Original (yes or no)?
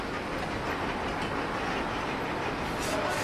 yes